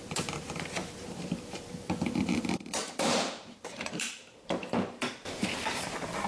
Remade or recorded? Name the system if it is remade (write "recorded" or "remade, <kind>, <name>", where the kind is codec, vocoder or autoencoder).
remade, vocoder, BigVGAN v2